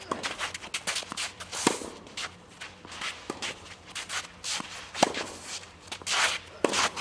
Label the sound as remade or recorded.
recorded